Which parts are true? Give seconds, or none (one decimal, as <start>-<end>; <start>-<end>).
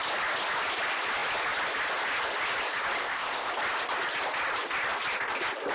0.0-3.0; 3.5-5.7